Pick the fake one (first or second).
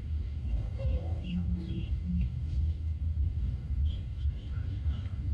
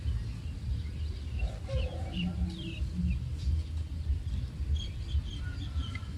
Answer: first